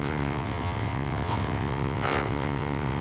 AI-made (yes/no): yes